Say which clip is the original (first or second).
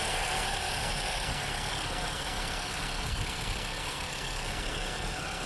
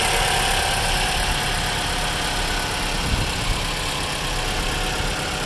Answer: second